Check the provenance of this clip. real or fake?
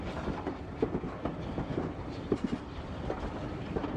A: real